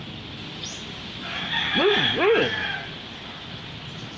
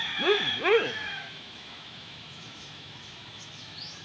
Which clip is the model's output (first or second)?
second